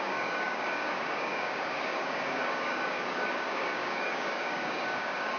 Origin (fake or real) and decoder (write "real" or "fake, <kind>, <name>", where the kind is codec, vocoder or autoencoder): fake, codec, DAC